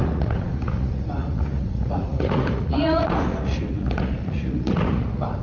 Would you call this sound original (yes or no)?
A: no